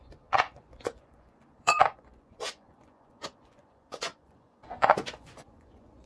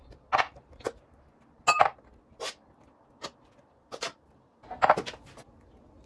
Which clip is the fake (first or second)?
first